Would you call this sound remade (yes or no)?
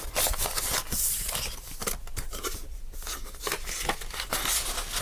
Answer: no